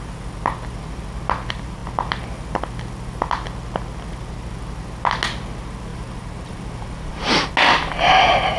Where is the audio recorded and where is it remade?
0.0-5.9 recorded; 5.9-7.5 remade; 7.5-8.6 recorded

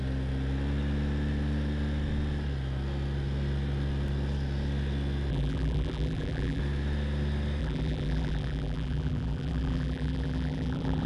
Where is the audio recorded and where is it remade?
0.0-5.3 recorded; 5.3-6.6 remade; 6.6-7.6 recorded; 7.6-11.1 remade

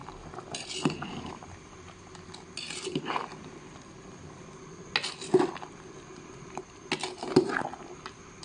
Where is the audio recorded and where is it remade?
0.0-4.6 remade; 4.6-8.4 recorded

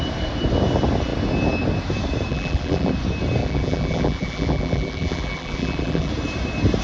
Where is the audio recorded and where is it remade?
0.0-2.3 recorded; 2.3-2.9 remade; 2.9-3.4 recorded; 3.4-6.1 remade; 6.1-6.8 recorded

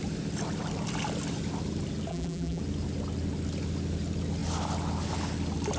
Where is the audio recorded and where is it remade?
0.0-2.1 recorded; 2.1-2.6 remade; 2.6-5.8 recorded

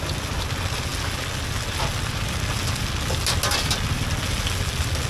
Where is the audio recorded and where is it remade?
0.0-5.1 recorded

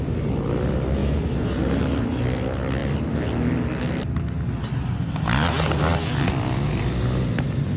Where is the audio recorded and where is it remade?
0.0-1.0 recorded; 1.0-1.9 remade; 1.9-7.8 recorded

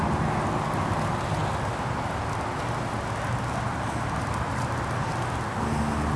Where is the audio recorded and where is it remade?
0.0-6.2 recorded